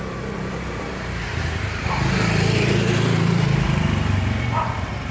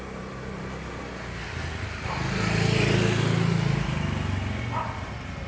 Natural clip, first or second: second